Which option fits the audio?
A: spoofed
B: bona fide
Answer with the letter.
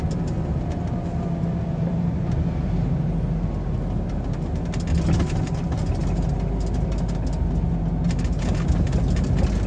B